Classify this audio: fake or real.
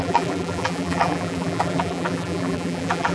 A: fake